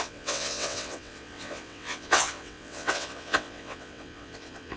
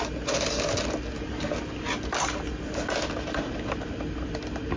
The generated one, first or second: first